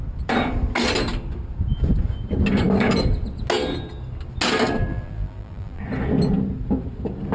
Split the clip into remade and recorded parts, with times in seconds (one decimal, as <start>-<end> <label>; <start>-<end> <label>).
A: 0.0-4.9 recorded; 4.9-5.8 remade; 5.8-7.3 recorded